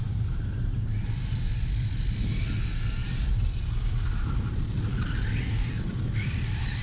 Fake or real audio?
real